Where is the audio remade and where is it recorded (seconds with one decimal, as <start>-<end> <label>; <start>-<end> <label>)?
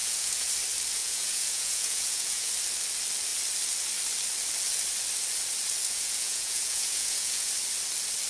0.0-0.5 remade; 0.5-1.0 recorded; 1.0-2.5 remade; 2.5-5.8 recorded; 5.8-7.5 remade; 7.5-8.3 recorded